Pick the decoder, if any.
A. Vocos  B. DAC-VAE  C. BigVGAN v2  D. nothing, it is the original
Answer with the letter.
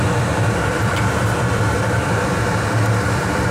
C